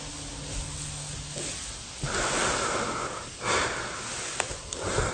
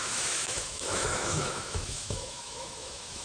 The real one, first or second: first